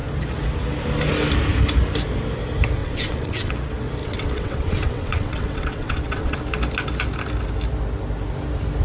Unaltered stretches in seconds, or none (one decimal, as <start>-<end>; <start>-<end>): 0.0-2.8; 3.5-4.0; 6.4-8.8